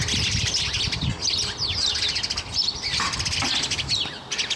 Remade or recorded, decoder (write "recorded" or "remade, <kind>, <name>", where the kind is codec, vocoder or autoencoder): recorded